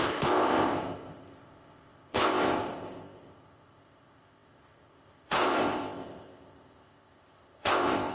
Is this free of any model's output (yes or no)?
no